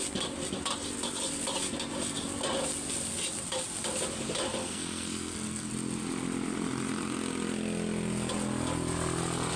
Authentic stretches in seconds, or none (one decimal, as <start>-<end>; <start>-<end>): 0.0-4.6; 5.7-9.6

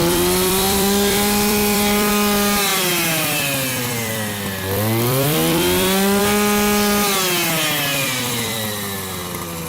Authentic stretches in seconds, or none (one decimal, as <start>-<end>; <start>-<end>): 2.1-2.7; 6.2-7.9; 9.2-9.7

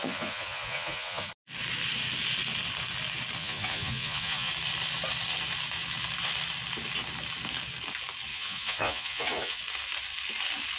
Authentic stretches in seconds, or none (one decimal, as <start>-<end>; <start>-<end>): 1.3-3.4; 4.5-8.3; 9.6-10.8

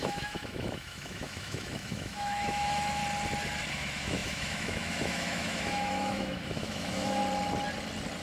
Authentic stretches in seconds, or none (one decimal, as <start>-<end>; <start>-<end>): 3.0-3.7; 7.2-8.2